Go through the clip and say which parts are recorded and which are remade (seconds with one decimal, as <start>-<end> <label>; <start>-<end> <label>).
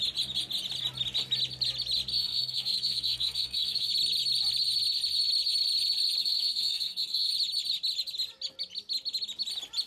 0.0-2.1 recorded; 2.1-3.9 remade; 3.9-6.2 recorded; 6.2-7.3 remade; 7.3-9.9 recorded